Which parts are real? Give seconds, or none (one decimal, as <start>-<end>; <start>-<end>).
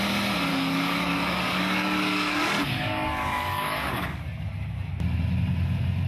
0.0-0.5; 4.2-6.1